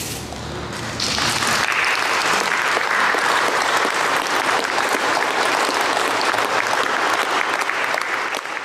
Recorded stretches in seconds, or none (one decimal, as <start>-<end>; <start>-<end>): 0.0-2.2; 6.2-8.6